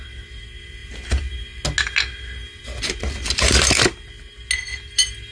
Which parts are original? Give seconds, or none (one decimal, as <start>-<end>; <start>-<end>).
0.0-5.3